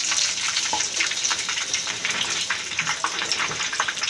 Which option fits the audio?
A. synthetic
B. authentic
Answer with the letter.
A